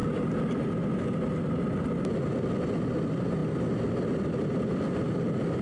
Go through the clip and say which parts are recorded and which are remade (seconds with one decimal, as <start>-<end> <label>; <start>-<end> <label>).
0.0-5.6 recorded